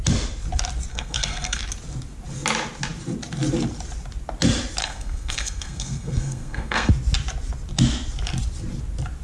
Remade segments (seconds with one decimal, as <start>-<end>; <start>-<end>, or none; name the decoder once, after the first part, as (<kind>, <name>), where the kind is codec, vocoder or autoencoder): 0.9-1.6 (codec, SNAC); 4.8-6.9